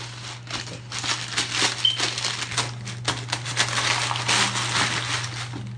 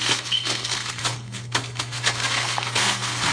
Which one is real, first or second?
first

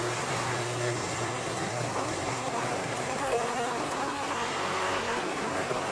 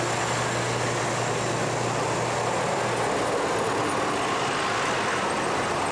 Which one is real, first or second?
second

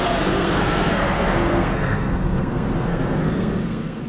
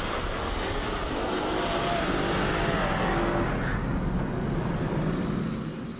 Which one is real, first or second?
second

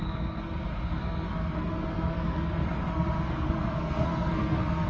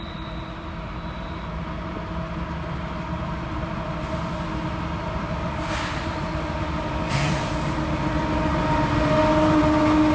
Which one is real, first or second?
second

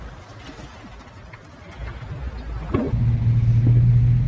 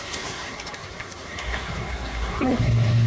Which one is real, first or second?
first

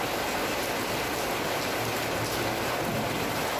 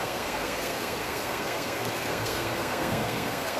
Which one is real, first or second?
first